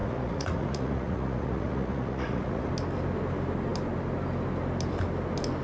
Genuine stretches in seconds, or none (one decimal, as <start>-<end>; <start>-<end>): 2.7-5.6